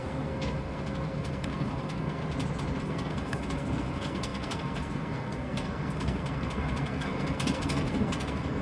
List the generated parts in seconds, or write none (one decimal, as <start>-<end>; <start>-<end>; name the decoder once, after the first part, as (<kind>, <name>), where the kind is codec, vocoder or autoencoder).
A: 0.0-2.2 (codec, SNAC); 2.8-8.6